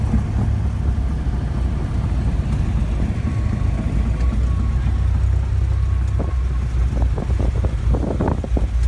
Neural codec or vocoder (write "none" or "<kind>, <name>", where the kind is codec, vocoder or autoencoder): none